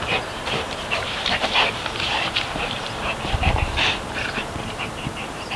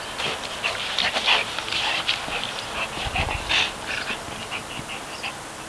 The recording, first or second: second